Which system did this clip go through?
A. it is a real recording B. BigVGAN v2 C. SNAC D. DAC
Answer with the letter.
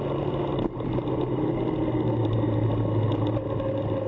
A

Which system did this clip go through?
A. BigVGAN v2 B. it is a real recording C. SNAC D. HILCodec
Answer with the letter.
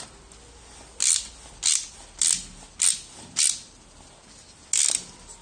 B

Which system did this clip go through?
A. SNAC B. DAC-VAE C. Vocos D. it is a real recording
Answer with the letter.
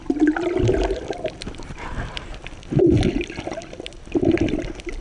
D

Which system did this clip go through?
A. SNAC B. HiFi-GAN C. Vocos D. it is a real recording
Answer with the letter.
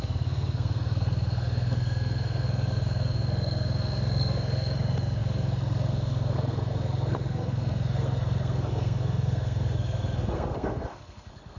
A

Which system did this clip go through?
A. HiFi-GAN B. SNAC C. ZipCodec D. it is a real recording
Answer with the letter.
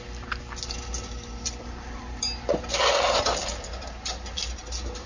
D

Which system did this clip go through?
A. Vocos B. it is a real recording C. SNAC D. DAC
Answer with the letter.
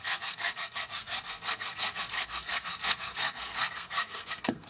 C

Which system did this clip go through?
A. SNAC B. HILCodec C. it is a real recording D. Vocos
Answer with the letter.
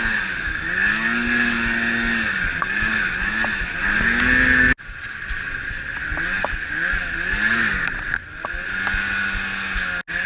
C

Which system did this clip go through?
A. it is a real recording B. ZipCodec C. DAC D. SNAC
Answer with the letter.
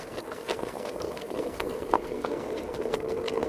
D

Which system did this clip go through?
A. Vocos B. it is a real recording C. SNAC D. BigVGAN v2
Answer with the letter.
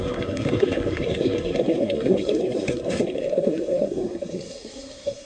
C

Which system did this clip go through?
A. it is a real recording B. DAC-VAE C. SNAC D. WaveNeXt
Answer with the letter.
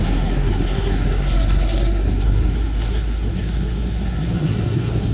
C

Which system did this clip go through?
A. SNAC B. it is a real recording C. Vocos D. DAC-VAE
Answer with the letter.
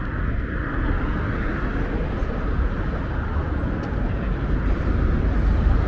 B